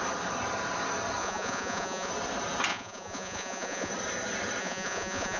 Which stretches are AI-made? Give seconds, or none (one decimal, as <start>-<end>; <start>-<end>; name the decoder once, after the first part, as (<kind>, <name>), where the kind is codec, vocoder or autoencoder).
1.2-2.1 (vocoder, Vocos); 2.7-3.9; 4.6-5.4

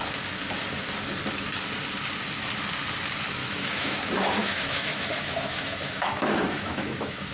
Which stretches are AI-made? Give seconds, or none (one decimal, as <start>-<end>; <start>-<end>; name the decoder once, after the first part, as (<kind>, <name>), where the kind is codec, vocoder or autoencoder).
3.4-4.0 (autoencoder, DAC-VAE); 4.4-7.3

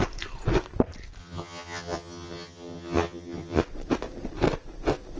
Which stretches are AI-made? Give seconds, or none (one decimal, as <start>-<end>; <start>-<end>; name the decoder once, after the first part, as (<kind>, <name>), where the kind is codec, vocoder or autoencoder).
1.2-3.6 (vocoder, HiFi-GAN)

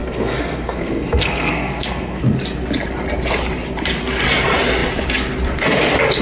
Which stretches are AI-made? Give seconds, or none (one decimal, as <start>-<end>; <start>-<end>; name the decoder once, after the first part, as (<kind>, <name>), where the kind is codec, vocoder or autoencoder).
0.0-2.2 (codec, SNAC)

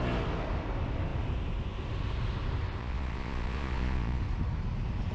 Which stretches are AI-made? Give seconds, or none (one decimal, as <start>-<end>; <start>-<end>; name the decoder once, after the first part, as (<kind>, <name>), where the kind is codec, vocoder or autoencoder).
2.8-4.2 (vocoder, Vocos)

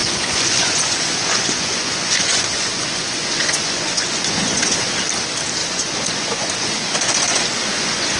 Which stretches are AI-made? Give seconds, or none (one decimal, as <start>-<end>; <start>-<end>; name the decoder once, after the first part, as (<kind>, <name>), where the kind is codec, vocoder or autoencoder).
0.0-4.9 (vocoder, Vocos); 5.6-8.2

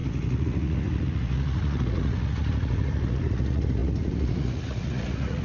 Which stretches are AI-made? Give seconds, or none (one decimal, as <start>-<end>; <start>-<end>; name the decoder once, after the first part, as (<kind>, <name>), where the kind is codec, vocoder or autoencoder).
0.0-5.4 (vocoder, Vocos)